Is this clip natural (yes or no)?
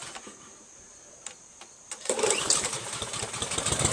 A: no